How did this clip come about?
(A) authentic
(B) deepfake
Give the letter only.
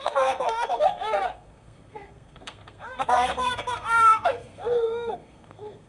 B